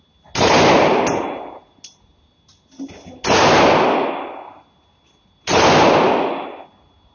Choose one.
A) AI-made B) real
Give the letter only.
B